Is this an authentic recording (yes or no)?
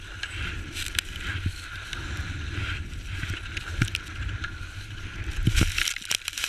yes